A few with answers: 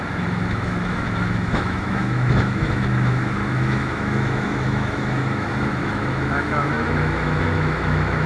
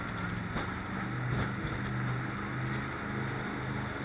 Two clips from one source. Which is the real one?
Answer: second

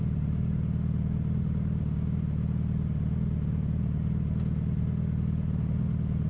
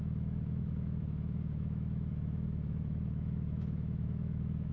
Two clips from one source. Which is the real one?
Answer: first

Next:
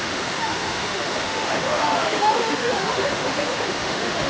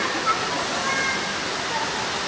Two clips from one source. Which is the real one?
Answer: second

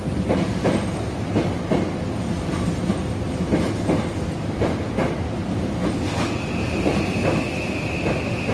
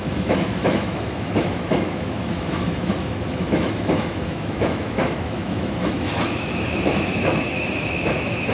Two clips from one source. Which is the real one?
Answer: first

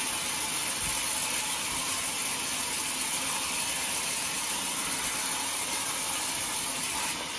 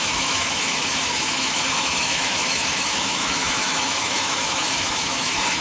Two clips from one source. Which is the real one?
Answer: first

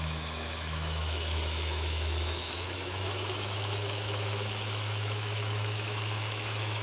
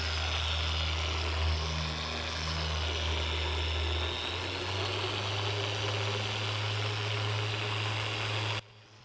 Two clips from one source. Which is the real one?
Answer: second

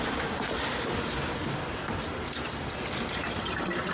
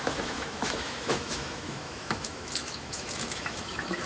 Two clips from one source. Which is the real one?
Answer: first